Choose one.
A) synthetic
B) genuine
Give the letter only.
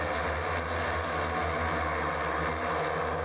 B